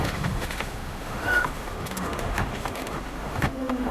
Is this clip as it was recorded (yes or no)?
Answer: no